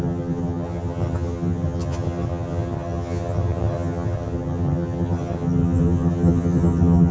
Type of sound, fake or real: fake